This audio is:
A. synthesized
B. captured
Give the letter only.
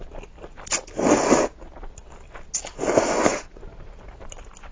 B